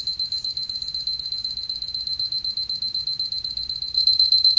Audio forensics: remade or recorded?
recorded